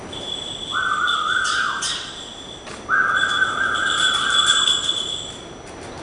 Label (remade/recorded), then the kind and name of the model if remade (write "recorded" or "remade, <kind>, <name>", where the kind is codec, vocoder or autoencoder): recorded